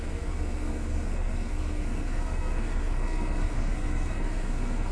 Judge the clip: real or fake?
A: fake